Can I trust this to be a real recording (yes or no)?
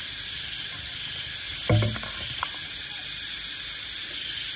yes